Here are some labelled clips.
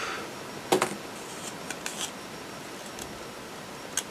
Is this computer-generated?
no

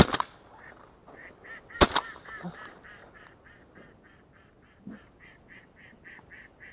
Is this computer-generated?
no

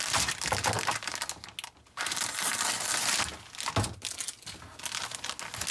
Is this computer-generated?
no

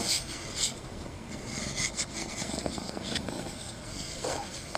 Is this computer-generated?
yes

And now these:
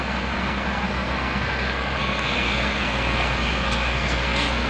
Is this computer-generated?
yes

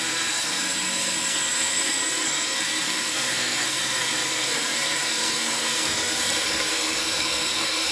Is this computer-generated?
yes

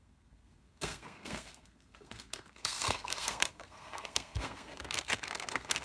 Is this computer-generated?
yes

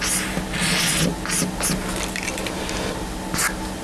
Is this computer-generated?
no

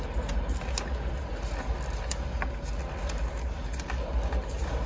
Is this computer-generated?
no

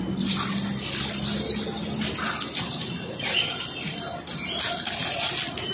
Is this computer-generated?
no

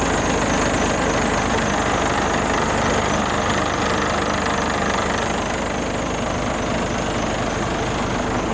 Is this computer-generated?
no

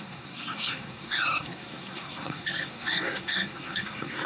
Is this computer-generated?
yes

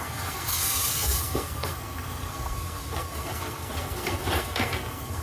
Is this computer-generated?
yes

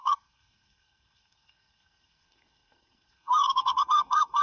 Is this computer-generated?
yes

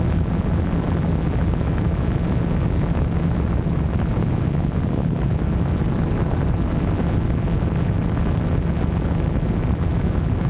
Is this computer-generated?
no